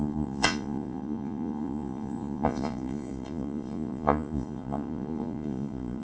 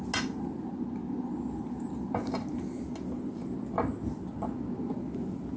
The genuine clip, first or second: second